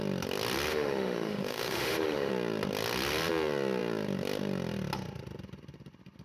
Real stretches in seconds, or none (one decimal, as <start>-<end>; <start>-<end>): 0.0-0.7; 2.3-6.2